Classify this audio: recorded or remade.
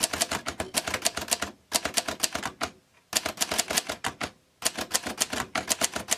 recorded